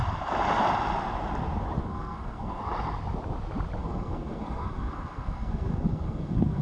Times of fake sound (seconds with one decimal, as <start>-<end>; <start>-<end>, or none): 1.8-2.6; 3.8-6.6